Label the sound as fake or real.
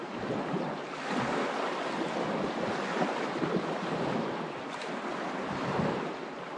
real